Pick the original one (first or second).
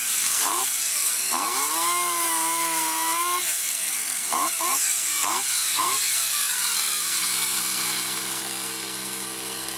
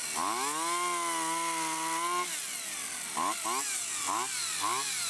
second